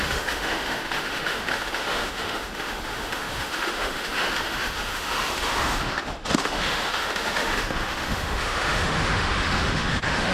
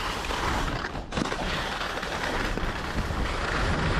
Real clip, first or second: second